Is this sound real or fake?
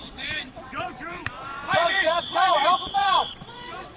fake